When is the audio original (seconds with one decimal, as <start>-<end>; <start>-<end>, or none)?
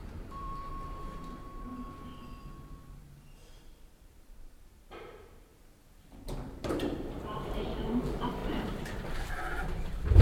1.7-3.6